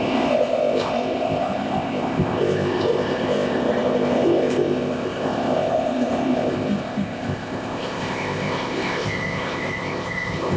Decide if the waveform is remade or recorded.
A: remade